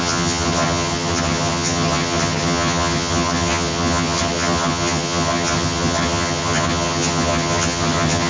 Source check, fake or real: fake